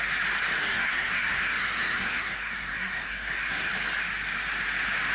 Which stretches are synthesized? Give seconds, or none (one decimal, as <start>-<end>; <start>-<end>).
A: 0.6-3.7

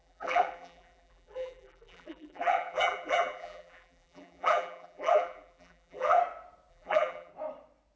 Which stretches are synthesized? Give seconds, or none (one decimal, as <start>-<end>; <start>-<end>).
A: 0.0-6.2; 6.7-7.3

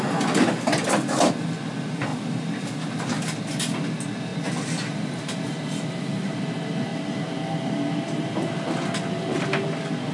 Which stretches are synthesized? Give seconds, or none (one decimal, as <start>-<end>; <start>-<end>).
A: none

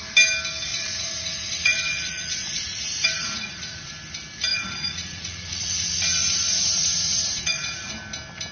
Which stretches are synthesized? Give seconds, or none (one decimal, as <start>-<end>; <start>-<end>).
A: 0.7-3.9; 4.5-7.9

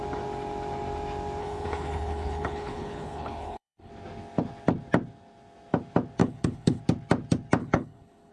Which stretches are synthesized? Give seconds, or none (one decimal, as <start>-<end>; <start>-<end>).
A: 1.4-3.9; 6.2-6.8; 7.6-8.3

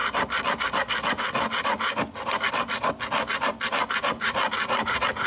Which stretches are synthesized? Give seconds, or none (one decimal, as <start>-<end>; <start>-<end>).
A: none

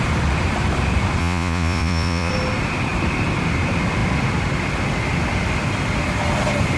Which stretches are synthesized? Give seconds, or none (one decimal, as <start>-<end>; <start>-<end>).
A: 1.2-2.3

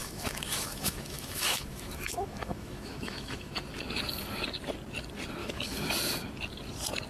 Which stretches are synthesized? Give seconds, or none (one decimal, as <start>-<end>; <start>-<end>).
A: 0.0-3.5; 5.4-5.9